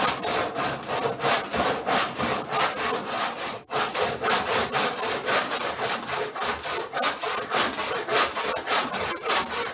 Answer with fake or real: real